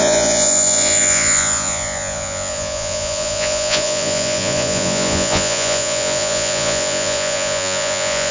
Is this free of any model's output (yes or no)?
no